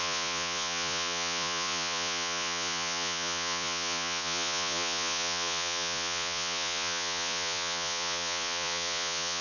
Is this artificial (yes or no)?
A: yes